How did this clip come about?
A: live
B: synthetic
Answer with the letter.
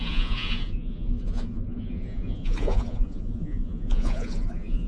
B